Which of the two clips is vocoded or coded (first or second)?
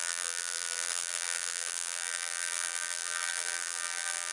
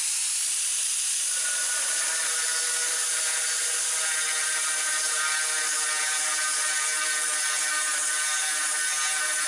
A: first